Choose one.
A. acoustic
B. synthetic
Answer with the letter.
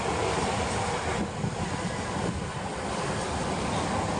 A